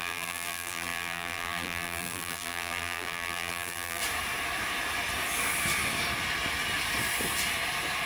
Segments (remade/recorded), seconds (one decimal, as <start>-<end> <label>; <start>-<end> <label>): 0.0-4.0 remade; 4.0-8.1 recorded